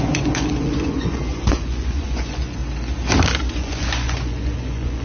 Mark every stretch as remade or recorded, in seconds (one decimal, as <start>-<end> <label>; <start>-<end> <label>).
0.0-2.6 remade; 2.6-3.5 recorded; 3.5-5.0 remade